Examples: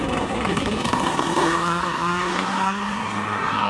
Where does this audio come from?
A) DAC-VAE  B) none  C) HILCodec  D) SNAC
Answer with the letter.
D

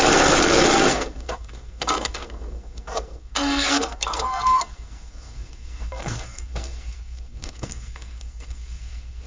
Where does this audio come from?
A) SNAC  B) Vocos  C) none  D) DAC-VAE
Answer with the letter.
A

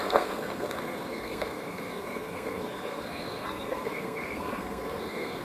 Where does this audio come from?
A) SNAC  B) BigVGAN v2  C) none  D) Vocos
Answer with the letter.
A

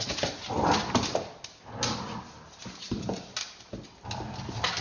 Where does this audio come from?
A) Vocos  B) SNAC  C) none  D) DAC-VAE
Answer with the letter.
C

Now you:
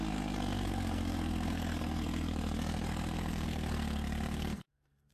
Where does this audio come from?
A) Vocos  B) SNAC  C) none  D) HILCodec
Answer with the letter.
B